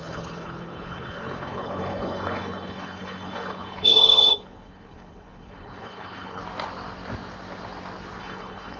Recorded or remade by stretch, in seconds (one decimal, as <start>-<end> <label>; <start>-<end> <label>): 0.0-6.4 remade; 6.4-8.2 recorded; 8.2-8.8 remade